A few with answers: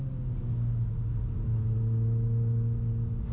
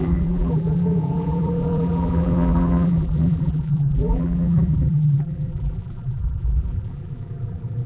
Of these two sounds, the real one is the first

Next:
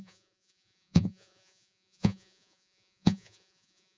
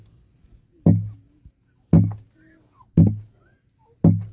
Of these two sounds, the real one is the second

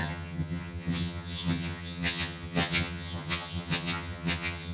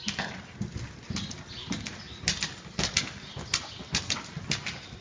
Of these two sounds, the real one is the second